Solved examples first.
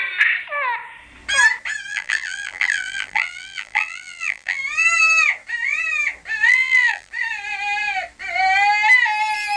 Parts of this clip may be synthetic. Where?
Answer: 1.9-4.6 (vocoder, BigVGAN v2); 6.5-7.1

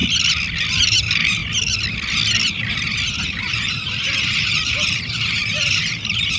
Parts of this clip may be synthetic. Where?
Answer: 0.7-1.4 (vocoder, BigVGAN v2); 3.2-6.4